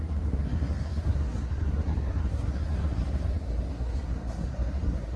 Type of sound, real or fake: fake